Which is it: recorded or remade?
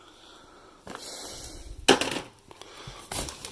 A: recorded